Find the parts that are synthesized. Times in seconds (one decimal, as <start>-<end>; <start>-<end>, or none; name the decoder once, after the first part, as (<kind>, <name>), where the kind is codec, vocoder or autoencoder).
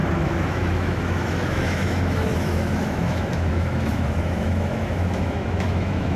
0.0-6.2 (autoencoder, DAC-VAE)